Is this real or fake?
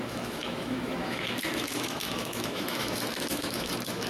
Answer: fake